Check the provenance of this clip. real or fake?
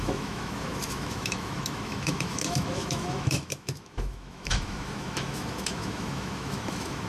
fake